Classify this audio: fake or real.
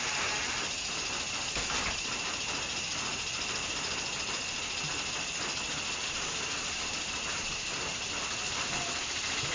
real